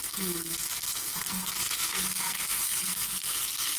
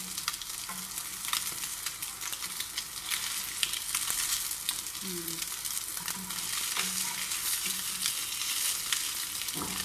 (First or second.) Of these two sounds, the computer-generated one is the first